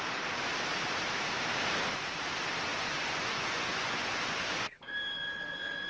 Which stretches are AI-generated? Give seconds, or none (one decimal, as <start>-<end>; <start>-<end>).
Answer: 2.7-4.8